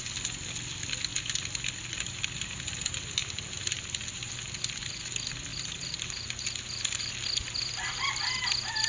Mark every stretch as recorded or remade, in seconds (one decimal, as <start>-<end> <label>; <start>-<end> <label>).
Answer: 0.0-3.2 recorded; 3.2-4.3 remade; 4.3-5.5 recorded; 5.5-7.1 remade; 7.1-8.9 recorded